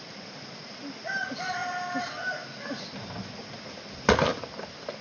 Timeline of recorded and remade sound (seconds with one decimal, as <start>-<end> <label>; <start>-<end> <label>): 0.0-5.0 recorded